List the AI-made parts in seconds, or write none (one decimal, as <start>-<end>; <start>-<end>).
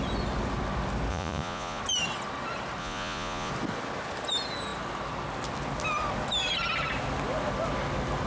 1.1-1.8; 2.8-3.5